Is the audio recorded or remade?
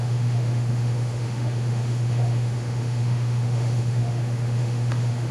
remade